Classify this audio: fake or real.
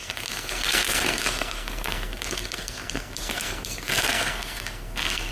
fake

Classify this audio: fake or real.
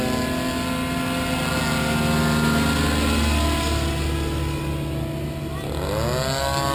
real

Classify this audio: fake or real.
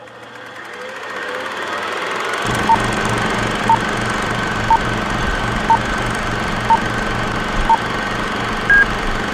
real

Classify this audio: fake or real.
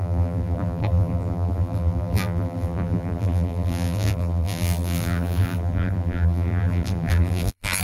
fake